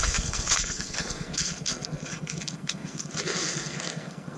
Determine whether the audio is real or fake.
fake